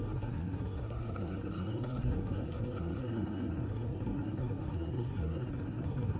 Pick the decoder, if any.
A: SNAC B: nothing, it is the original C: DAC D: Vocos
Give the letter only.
A